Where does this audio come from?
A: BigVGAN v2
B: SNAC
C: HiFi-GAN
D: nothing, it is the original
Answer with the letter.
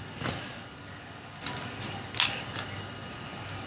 D